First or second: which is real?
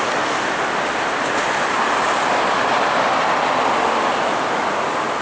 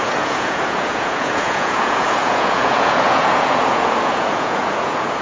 first